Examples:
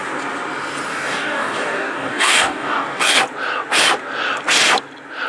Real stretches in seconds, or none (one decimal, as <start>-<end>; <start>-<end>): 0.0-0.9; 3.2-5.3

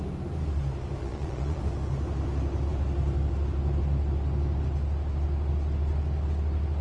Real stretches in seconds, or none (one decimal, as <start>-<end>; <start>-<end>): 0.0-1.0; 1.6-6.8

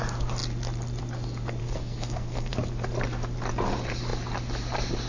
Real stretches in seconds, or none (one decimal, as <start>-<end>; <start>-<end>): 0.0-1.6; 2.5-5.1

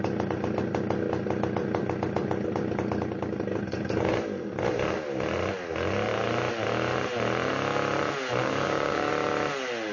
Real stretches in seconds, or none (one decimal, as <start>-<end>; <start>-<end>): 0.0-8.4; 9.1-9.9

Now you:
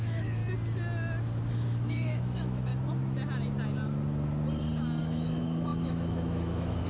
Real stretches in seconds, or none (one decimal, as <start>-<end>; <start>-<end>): 0.4-1.5; 2.7-5.0

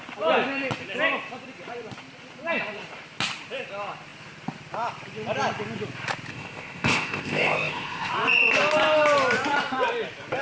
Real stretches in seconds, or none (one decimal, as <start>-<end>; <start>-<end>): 0.0-6.3; 8.1-10.4

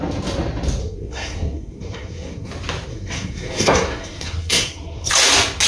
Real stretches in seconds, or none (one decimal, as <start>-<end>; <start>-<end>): 0.0-0.8; 2.5-2.9; 5.1-5.7

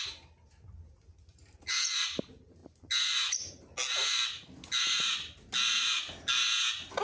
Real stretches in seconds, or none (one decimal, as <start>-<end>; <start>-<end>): 0.0-7.0